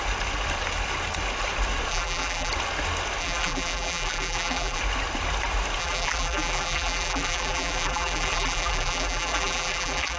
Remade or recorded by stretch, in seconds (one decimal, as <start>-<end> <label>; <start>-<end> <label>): 0.0-1.9 recorded; 1.9-2.5 remade; 2.5-3.2 recorded; 3.2-4.8 remade; 4.8-5.8 recorded; 5.8-10.2 remade